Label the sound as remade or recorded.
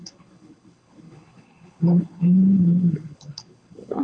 remade